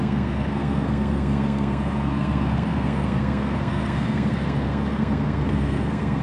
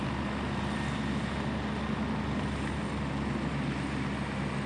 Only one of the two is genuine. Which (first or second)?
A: second